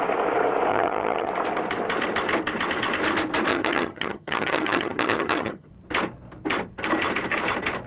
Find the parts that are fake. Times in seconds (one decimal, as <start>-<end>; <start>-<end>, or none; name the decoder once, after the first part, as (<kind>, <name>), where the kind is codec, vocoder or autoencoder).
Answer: 0.7-1.3 (vocoder, HiFi-GAN); 3.5-5.7